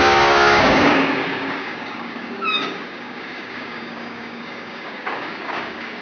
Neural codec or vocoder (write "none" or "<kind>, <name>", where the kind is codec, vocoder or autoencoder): codec, DAC